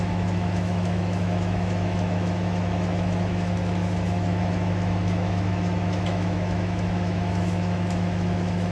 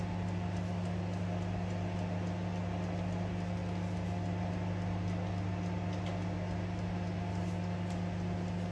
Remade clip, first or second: first